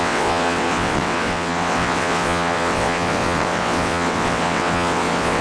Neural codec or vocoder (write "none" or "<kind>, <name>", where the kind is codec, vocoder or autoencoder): vocoder, WaveNeXt